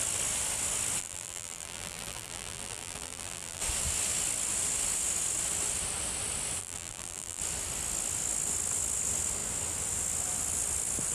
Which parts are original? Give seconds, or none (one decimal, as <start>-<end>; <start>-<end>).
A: 0.0-1.0; 3.6-6.6; 7.4-11.1